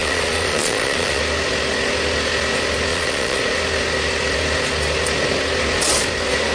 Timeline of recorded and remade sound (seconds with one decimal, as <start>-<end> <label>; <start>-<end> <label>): 0.0-1.2 remade; 1.2-2.9 recorded; 2.9-3.4 remade; 3.4-6.5 recorded